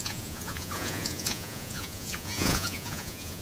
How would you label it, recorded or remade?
remade